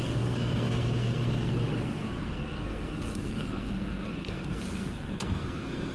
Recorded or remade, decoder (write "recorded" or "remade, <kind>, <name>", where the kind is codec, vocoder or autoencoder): remade, codec, SNAC